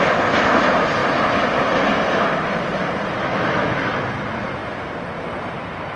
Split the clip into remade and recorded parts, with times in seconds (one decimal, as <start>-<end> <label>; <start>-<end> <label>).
0.0-3.2 recorded; 3.2-3.9 remade; 3.9-6.0 recorded